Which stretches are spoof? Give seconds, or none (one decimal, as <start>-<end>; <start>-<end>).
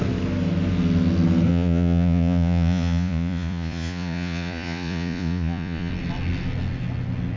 1.5-5.9